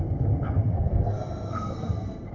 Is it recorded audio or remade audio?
remade